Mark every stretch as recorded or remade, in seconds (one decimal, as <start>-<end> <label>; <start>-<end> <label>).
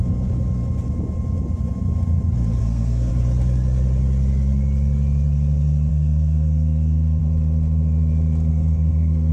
0.0-2.6 recorded; 2.6-3.1 remade; 3.1-5.9 recorded; 5.9-7.2 remade; 7.2-8.5 recorded; 8.5-9.3 remade